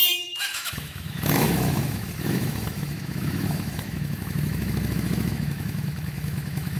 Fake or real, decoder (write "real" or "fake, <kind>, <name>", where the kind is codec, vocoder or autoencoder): fake, autoencoder, DAC-VAE